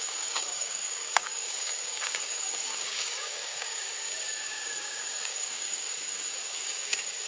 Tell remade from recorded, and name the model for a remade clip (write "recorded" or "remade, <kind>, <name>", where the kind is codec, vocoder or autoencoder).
remade, codec, DAC